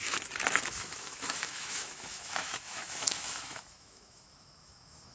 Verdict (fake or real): fake